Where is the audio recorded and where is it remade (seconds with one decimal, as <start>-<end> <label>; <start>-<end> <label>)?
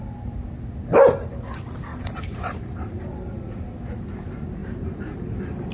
0.0-1.9 recorded; 1.9-3.1 remade; 3.1-4.6 recorded; 4.6-5.7 remade